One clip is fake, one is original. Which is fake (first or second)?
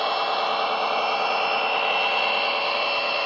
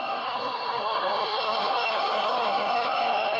second